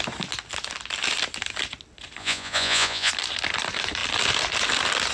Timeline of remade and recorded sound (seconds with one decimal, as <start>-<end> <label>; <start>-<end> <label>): 0.0-2.2 recorded; 2.2-3.1 remade; 3.1-5.1 recorded